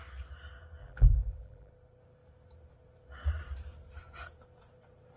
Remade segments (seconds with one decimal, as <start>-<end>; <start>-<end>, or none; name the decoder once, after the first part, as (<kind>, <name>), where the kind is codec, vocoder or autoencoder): 0.8-1.7 (vocoder, BigVGAN v2)